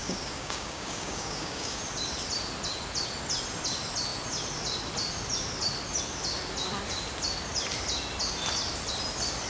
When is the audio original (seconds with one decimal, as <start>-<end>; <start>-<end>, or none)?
1.8-9.5